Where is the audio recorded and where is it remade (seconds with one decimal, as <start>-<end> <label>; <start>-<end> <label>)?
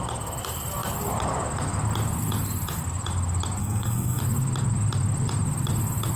0.0-3.6 recorded; 3.6-4.2 remade; 4.2-6.2 recorded